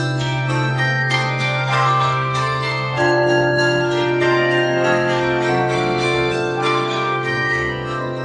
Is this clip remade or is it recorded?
remade